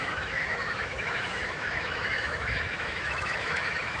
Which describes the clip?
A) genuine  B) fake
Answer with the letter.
B